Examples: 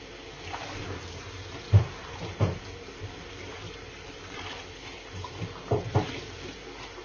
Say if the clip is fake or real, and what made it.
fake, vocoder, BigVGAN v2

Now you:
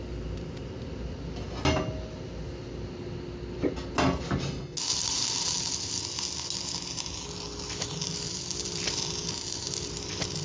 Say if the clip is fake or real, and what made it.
real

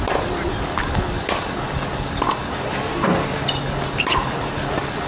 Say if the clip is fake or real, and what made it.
real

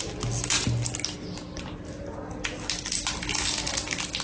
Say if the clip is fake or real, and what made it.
real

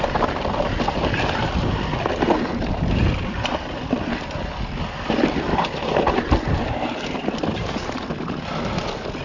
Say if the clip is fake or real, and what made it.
real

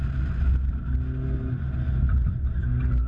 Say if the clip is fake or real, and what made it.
real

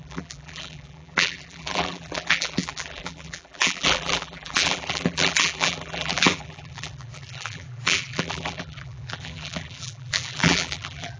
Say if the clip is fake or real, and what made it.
fake, vocoder, BigVGAN v2